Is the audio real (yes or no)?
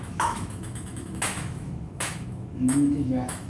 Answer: no